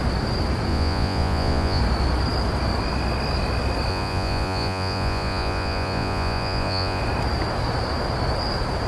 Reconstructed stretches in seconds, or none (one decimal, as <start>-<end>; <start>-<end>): 0.7-1.8; 3.9-7.0